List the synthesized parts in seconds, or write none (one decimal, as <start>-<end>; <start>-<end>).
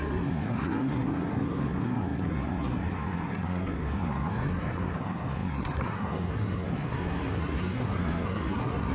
0.0-8.9